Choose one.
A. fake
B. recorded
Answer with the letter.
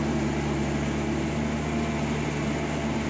B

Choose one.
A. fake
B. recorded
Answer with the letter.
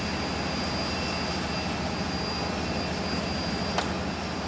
B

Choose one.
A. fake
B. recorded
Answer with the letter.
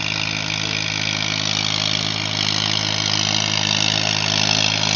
B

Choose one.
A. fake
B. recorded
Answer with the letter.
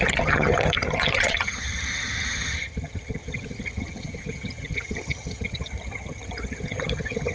A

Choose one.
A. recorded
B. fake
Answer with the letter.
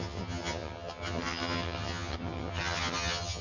B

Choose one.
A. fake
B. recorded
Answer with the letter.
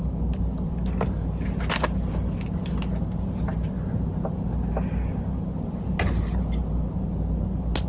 B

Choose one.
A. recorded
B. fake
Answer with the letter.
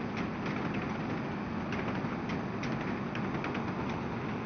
A